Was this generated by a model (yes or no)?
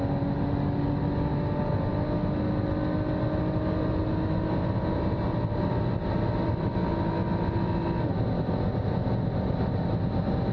no